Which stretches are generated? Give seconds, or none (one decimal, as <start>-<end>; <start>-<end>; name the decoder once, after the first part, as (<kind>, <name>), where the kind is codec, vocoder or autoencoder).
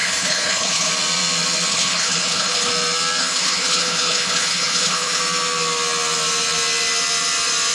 0.0-0.9 (codec, HILCodec); 1.7-2.7; 3.2-5.2